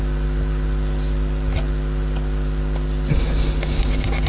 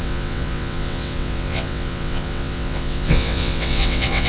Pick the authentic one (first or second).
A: first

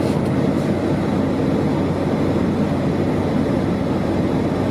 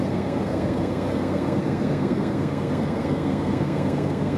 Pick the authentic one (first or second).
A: first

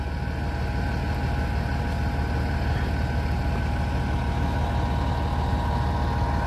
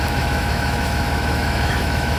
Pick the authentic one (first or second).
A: first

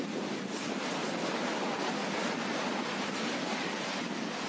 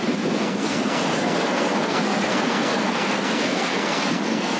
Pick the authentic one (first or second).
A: first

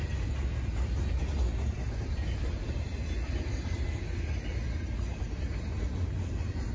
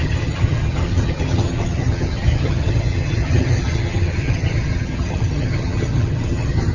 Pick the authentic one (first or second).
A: first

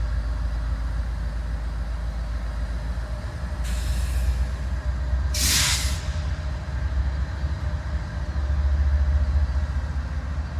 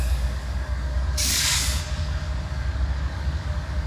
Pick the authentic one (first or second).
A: first